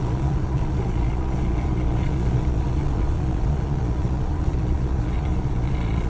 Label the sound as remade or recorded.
remade